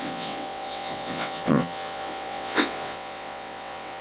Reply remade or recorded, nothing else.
remade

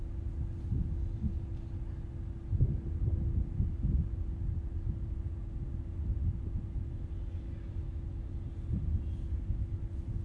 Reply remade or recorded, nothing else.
recorded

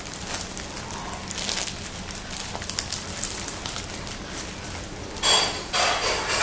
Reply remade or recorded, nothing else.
recorded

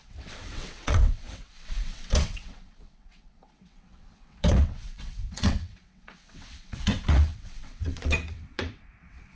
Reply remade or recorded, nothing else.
remade